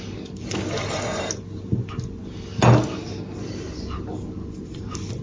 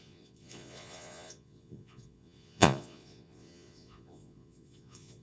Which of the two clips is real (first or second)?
first